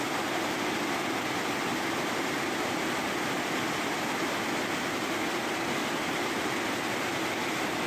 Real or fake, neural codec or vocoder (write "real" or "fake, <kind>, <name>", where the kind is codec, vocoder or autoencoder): real